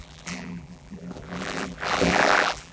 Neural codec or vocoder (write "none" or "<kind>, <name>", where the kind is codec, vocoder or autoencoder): vocoder, BigVGAN v2